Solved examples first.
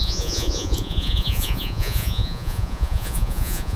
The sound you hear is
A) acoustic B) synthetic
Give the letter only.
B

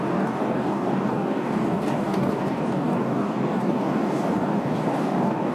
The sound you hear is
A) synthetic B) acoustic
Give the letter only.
A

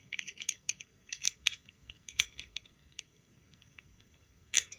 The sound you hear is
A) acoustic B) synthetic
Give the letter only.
B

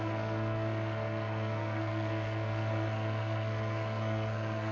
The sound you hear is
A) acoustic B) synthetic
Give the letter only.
B